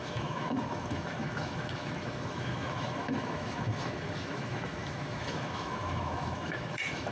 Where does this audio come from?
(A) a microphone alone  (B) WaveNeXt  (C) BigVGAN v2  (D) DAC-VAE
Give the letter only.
D